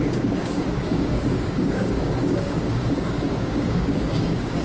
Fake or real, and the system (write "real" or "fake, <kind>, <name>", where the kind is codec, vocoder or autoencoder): fake, codec, DAC